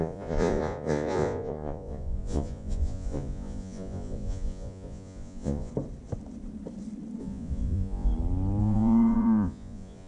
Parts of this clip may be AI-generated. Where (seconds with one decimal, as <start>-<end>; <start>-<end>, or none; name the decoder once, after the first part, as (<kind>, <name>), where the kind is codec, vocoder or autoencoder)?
0.0-5.7 (vocoder, Vocos); 7.2-8.1; 8.6-10.1